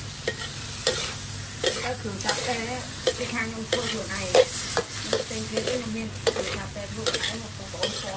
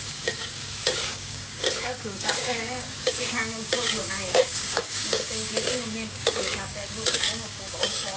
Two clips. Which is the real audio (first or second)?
first